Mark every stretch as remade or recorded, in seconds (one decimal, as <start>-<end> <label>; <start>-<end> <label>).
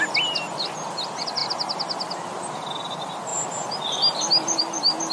0.0-5.1 recorded